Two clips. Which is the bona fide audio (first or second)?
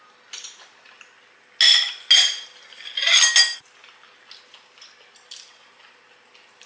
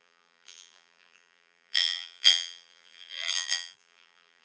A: first